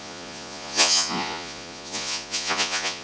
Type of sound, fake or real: fake